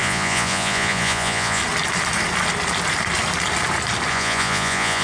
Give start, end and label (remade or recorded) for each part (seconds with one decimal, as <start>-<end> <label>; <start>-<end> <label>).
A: 0.0-1.6 remade; 1.6-4.1 recorded; 4.1-5.0 remade